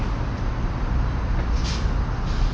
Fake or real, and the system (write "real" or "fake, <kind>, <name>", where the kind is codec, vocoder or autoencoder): real